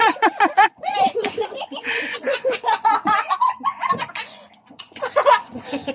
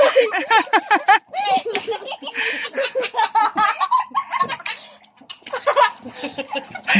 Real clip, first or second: second